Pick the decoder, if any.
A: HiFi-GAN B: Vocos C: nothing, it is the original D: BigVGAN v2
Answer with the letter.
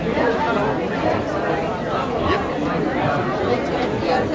C